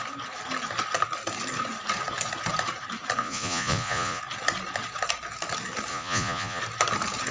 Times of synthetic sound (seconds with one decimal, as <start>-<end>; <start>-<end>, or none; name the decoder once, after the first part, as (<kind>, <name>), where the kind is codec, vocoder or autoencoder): 3.2-4.2 (vocoder, Vocos); 5.9-6.6